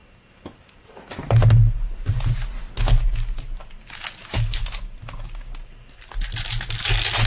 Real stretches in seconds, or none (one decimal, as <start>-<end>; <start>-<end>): 0.0-7.3